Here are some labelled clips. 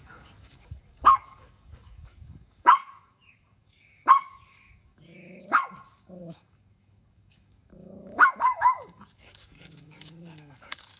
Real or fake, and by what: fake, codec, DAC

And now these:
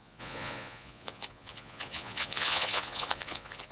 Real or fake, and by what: fake, vocoder, Vocos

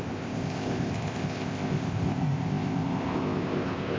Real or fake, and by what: fake, codec, ZipCodec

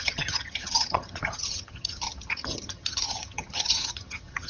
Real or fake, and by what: fake, vocoder, HiFi-GAN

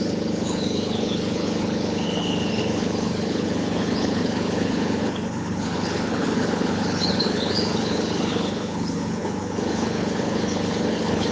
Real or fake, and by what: fake, codec, HILCodec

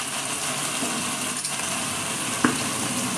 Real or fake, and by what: real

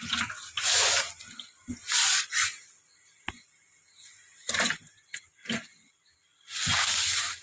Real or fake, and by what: real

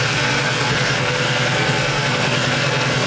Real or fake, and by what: fake, codec, SNAC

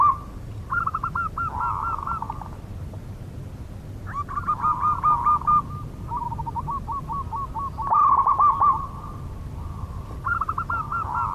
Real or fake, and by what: real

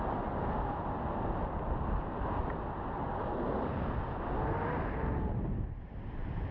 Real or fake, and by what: real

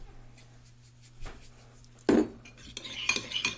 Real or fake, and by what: real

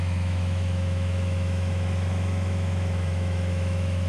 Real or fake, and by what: fake, autoencoder, DAC-VAE